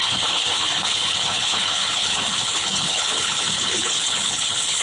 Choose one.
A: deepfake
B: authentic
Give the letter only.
A